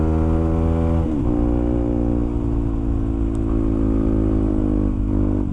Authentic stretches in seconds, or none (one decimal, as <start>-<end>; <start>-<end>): 0.0-5.5